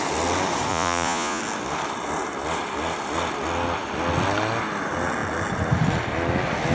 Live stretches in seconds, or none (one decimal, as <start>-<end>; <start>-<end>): 0.0-0.7; 1.4-6.7